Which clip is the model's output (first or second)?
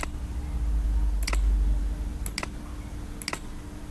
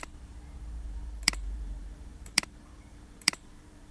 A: second